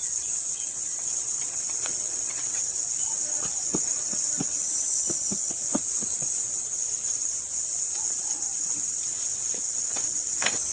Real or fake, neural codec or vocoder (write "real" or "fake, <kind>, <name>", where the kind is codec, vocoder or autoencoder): fake, vocoder, WaveNeXt